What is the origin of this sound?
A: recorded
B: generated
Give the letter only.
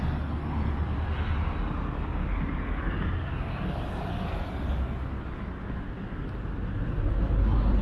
A